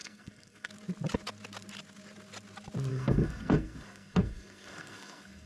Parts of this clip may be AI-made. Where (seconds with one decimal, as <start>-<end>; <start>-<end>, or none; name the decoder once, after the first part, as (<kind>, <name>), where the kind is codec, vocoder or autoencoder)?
0.0-0.7 (codec, SNAC); 2.9-5.5